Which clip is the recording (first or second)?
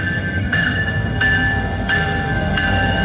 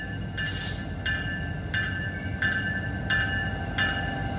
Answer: second